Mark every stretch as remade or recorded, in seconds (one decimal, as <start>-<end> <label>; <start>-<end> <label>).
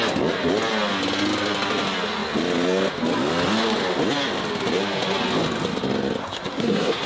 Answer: 0.0-6.2 recorded; 6.2-7.1 remade